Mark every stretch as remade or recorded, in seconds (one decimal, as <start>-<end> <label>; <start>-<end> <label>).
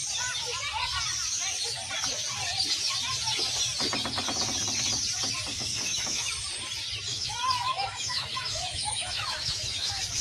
0.0-5.5 recorded; 5.5-6.3 remade; 6.3-7.1 recorded; 7.1-10.2 remade